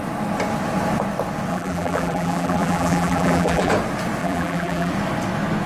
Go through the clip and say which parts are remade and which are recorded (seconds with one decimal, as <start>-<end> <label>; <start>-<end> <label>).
0.0-1.5 recorded; 1.5-3.7 remade; 3.7-4.2 recorded; 4.2-4.9 remade; 4.9-5.7 recorded